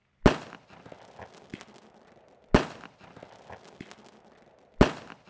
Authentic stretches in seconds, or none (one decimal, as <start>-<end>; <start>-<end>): 0.0-5.3